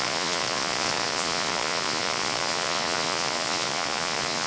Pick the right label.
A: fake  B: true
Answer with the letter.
A